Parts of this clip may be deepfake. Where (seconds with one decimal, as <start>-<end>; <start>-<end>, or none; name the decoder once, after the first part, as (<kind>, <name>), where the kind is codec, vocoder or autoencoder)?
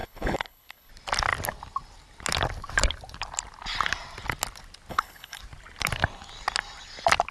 0.0-0.9 (codec, HILCodec); 4.9-5.4